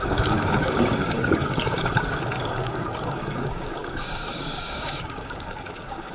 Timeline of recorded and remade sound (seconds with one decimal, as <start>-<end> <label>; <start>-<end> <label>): 0.0-6.1 remade